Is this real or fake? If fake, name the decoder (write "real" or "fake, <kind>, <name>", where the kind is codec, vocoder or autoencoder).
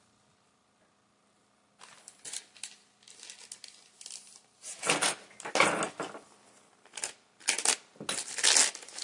real